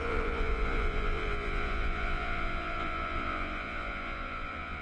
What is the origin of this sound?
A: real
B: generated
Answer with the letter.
B